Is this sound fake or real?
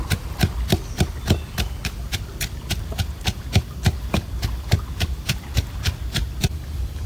real